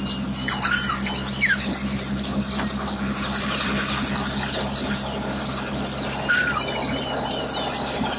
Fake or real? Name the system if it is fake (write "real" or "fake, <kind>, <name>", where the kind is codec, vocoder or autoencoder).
real